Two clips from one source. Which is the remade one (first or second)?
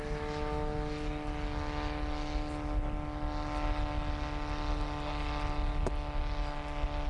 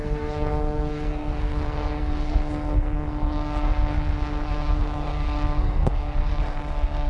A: second